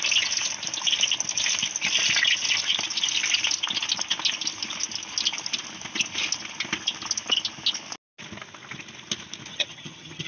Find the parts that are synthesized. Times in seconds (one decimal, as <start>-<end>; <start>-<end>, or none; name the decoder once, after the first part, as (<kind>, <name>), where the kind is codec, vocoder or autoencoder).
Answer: 9.5-10.3 (vocoder, HiFi-GAN)

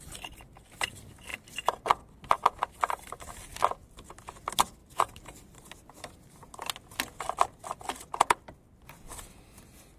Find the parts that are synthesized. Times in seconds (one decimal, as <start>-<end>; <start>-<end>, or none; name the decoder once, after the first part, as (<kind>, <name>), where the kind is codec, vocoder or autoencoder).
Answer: 4.8-6.1 (vocoder, BigVGAN v2)